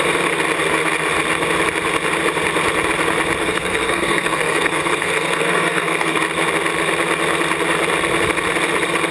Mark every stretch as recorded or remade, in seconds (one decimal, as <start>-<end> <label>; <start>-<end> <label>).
0.0-3.4 recorded; 3.4-6.2 remade; 6.2-9.1 recorded